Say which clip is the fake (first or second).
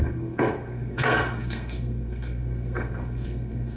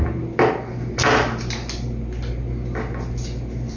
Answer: first